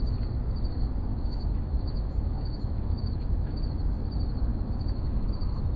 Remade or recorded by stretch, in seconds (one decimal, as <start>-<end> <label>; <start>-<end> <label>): 0.0-1.1 recorded; 1.1-3.6 remade; 3.6-4.5 recorded; 4.5-5.3 remade; 5.3-5.8 recorded